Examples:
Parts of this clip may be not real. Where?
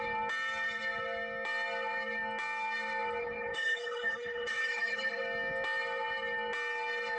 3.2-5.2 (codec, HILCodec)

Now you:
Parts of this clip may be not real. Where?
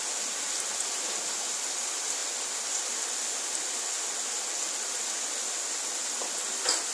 none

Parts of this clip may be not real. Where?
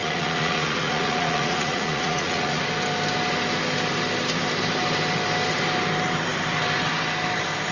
0.0-2.6 (vocoder, Vocos)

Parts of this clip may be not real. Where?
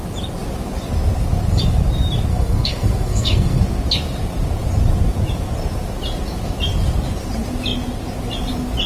2.3-3.6 (codec, SNAC)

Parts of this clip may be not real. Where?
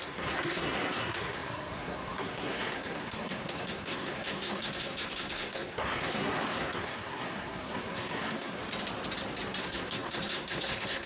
0.0-8.6 (codec, SNAC); 9.6-11.1